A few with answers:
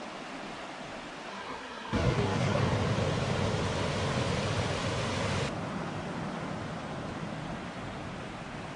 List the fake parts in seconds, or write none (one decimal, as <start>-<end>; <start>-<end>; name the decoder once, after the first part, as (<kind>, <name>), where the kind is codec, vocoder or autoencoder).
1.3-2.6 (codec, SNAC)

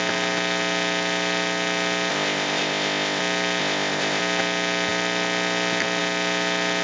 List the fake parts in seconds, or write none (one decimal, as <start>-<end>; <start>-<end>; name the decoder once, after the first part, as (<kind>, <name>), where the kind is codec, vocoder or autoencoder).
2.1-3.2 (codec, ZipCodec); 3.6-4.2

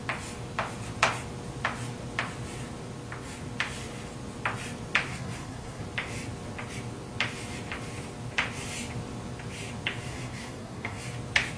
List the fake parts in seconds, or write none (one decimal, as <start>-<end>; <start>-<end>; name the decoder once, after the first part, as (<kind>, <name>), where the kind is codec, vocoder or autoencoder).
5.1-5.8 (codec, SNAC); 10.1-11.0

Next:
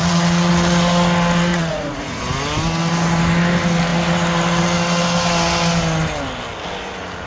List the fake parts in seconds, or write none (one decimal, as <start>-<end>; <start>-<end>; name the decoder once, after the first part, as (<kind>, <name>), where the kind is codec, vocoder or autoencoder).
0.0-0.5 (vocoder, Vocos); 1.5-2.2

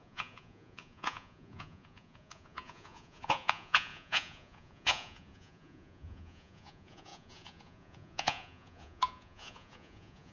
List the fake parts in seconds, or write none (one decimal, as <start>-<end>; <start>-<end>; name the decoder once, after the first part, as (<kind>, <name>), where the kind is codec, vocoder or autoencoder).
0.0-10.3 (vocoder, Vocos)